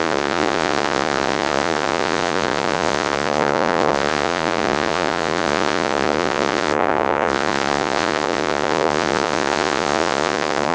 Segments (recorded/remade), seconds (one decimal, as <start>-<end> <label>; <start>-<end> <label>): 0.0-10.7 remade